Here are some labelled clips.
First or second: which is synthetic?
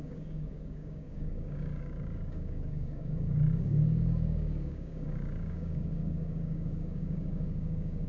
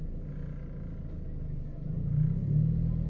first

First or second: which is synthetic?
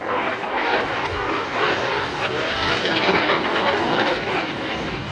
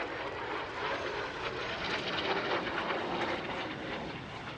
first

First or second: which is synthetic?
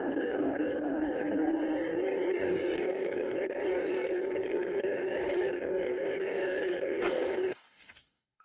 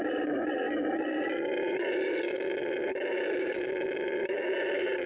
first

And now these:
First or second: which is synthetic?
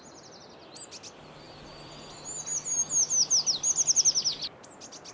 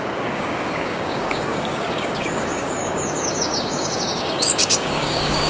second